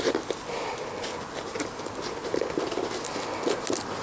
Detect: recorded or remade recorded